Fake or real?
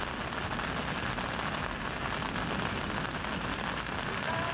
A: real